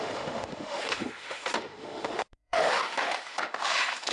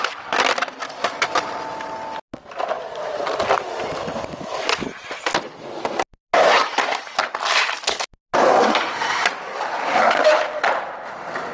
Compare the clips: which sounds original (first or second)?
second